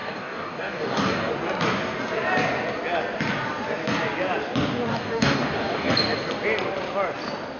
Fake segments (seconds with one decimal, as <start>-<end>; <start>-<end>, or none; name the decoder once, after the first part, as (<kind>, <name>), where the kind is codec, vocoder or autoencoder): 0.0-1.3 (codec, DAC); 4.9-5.9